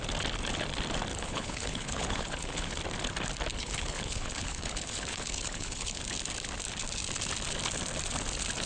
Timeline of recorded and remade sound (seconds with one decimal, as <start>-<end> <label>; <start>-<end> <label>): 0.0-1.1 recorded; 1.1-2.7 remade; 2.7-3.5 recorded; 3.5-6.0 remade; 6.0-8.7 recorded